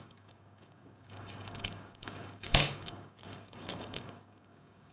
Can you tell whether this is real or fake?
fake